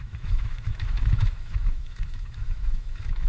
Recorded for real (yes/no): no